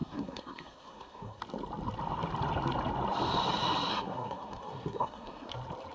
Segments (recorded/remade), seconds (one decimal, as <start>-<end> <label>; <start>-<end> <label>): 0.0-1.4 remade; 1.4-3.9 recorded; 3.9-5.5 remade; 5.5-5.9 recorded